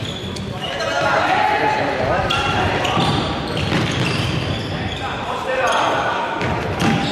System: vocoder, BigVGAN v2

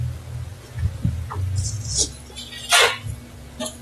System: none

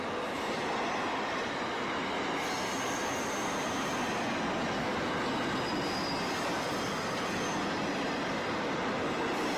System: none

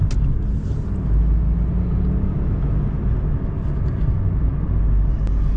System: none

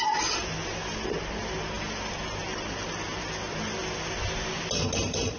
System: none